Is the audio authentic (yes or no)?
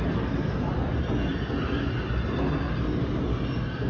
yes